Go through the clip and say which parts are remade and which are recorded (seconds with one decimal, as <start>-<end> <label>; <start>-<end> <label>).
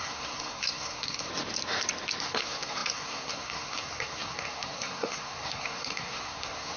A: 0.0-1.3 remade; 1.3-2.2 recorded; 2.2-6.8 remade